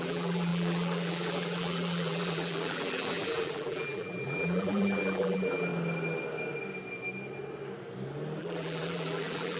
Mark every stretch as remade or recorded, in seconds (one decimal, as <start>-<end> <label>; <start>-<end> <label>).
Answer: 0.0-5.7 remade; 5.7-8.4 recorded; 8.4-9.6 remade